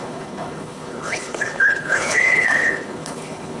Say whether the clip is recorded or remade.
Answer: remade